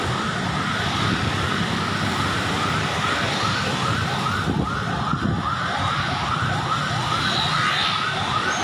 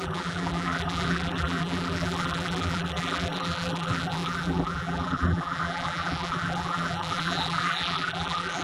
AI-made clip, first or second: second